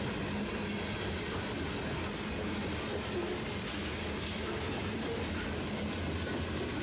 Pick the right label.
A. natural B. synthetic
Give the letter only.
A